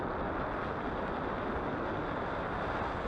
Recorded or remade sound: recorded